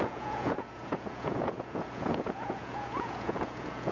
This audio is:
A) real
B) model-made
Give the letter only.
B